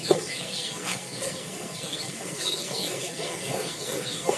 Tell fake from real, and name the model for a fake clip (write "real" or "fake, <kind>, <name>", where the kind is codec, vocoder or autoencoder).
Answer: fake, codec, SNAC